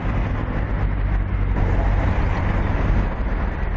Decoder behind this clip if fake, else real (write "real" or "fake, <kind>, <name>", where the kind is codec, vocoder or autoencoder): real